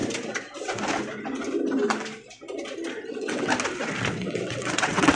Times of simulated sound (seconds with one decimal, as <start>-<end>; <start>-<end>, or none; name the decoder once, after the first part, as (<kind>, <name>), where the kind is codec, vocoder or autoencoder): 3.1-3.5 (vocoder, WaveNeXt); 4.1-5.2